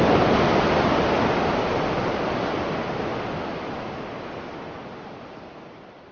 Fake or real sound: real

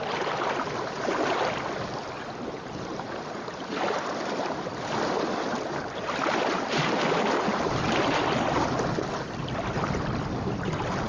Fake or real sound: real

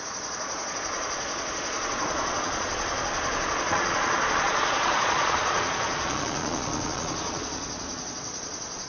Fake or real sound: fake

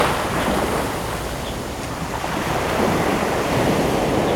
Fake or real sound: real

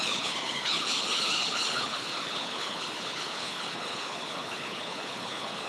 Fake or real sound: fake